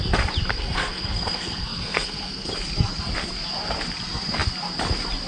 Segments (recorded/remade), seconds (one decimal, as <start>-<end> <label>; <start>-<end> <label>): 0.0-0.5 recorded; 0.5-2.5 remade; 2.5-5.3 recorded